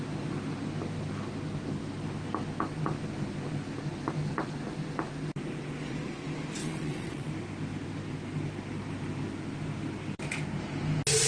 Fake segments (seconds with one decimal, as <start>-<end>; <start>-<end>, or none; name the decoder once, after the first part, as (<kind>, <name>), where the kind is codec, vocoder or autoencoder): 6.6-7.3 (vocoder, WaveNeXt)